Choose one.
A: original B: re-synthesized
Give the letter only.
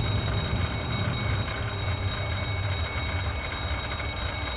A